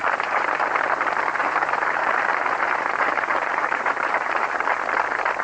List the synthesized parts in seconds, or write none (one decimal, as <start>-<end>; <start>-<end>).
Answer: 0.0-0.6; 1.4-4.6